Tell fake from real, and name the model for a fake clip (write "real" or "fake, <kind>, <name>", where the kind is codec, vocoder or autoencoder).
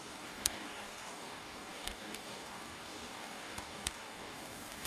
fake, codec, DAC